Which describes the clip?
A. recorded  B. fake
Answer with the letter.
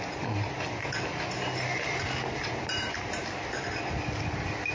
A